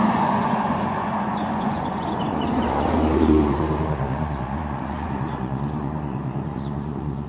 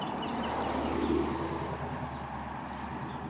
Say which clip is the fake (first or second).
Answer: first